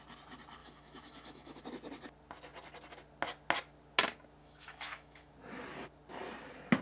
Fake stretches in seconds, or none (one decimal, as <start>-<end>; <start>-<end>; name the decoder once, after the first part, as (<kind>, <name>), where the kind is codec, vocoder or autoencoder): 0.6-1.6 (autoencoder, DAC-VAE); 4.4-5.3